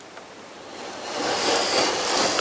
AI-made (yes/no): yes